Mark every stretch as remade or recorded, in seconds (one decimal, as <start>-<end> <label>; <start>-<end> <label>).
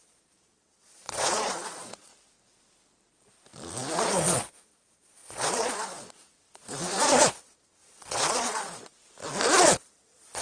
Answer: 0.0-2.1 remade; 2.1-4.0 recorded; 4.0-8.9 remade; 8.9-9.6 recorded; 9.6-10.4 remade